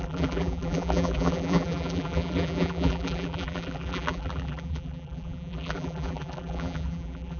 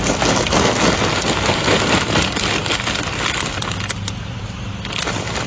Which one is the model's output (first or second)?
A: first